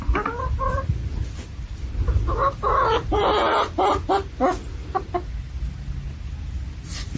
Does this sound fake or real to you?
real